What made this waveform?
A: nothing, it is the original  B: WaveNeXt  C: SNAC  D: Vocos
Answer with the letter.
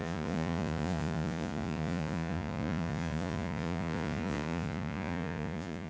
D